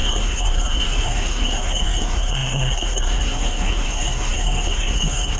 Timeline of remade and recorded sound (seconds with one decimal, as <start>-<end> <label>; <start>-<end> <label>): 0.0-5.4 remade